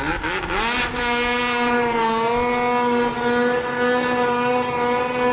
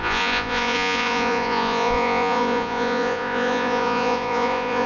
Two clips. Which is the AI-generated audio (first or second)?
second